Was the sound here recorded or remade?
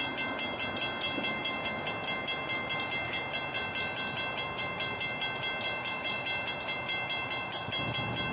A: recorded